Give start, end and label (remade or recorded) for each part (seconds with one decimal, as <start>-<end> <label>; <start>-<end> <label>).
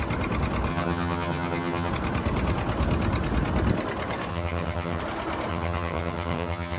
0.0-0.7 recorded; 0.7-1.9 remade; 1.9-4.3 recorded; 4.3-5.0 remade; 5.0-5.5 recorded; 5.5-6.8 remade